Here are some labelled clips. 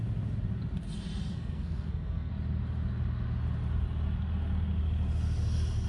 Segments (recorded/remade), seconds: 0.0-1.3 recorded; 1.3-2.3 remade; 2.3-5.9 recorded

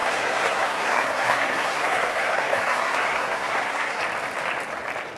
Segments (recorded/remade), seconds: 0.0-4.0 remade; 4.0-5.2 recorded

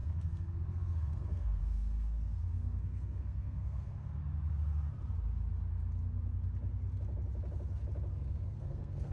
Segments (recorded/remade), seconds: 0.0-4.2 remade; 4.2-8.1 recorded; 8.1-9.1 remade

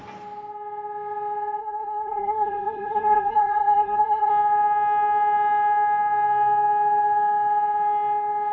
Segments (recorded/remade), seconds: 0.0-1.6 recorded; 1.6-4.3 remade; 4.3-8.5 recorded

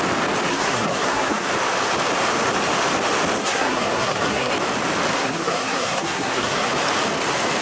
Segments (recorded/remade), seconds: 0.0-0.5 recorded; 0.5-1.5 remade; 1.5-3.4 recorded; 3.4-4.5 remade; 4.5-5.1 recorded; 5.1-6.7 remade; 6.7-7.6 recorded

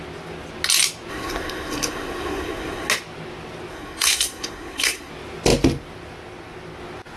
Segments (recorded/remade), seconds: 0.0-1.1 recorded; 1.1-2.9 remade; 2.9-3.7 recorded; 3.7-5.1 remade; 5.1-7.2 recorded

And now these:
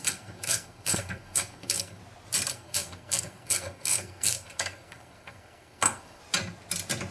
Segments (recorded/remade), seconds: 0.0-2.0 remade; 2.0-2.5 recorded; 2.5-6.2 remade; 6.2-7.1 recorded

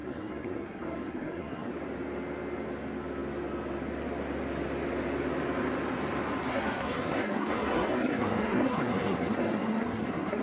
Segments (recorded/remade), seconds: 0.0-1.7 remade; 1.7-6.5 recorded; 6.5-10.4 remade